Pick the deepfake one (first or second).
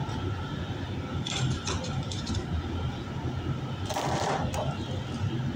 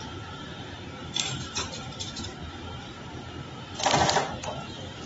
second